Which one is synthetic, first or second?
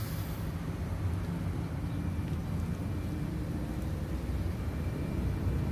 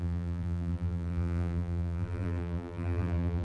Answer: second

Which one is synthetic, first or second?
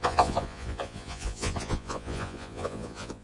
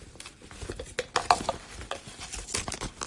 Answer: first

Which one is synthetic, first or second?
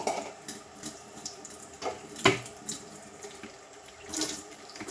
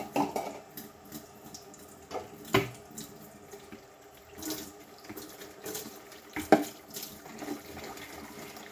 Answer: first